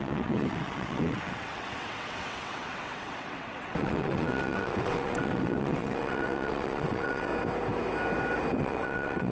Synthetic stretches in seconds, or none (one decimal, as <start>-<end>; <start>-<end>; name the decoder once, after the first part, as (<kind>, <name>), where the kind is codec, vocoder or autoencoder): 0.0-7.3 (vocoder, WaveNeXt); 8.6-9.3

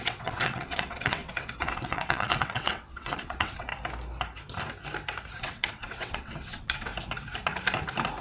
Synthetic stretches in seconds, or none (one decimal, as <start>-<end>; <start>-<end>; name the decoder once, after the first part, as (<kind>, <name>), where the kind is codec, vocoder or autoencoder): 0.0-3.7 (vocoder, WaveNeXt); 5.4-6.9

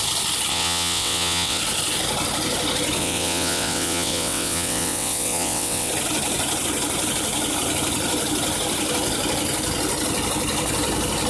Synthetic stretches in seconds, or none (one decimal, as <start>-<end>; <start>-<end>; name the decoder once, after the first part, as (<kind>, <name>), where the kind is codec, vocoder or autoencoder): 0.5-1.6 (vocoder, WaveNeXt); 3.0-5.9

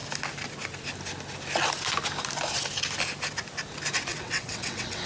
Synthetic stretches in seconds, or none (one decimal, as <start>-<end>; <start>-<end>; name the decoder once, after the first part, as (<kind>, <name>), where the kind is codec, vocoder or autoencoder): 4.1-5.1 (vocoder, WaveNeXt)

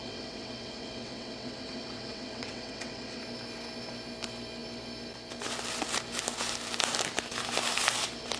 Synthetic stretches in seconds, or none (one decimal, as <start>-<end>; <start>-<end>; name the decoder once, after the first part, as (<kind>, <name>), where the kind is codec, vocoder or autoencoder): 0.0-3.2 (vocoder, WaveNeXt)